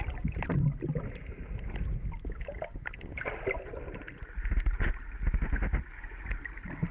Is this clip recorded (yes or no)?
yes